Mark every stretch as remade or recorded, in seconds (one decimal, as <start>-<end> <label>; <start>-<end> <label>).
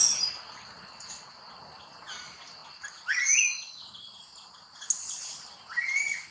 0.0-6.3 recorded